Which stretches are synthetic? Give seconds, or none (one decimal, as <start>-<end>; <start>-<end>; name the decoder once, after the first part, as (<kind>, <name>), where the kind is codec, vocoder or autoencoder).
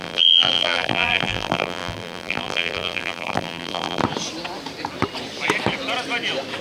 0.0-4.0 (vocoder, BigVGAN v2)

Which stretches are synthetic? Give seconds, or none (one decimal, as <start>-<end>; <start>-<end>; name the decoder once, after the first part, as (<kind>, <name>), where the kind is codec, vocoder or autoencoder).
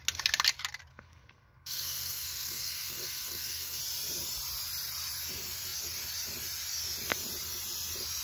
0.9-3.8 (codec, SNAC)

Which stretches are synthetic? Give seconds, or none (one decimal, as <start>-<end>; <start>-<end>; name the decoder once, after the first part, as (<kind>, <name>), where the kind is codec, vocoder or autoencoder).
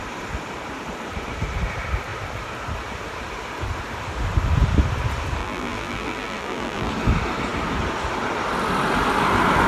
5.4-6.9 (vocoder, BigVGAN v2)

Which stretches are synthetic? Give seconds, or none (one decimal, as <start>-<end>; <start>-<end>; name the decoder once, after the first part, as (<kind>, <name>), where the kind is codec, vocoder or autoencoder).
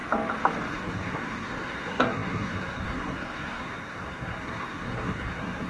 0.7-5.7 (codec, SNAC)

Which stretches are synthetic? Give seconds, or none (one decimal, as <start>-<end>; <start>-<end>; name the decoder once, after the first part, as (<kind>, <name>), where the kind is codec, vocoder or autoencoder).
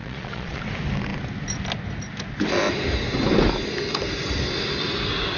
0.0-0.6 (vocoder, Vocos)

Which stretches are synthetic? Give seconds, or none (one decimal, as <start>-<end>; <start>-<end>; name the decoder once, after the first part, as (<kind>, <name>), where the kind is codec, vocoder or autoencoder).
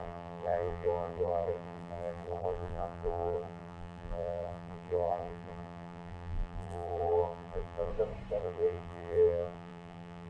0.0-7.9 (vocoder, BigVGAN v2); 8.4-10.3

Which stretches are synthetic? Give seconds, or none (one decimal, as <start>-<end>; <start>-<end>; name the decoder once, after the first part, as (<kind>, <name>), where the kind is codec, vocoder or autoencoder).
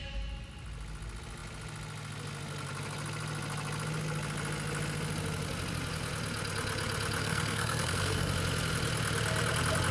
7.2-8.3 (codec, SNAC)